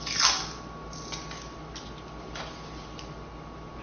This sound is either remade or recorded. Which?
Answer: recorded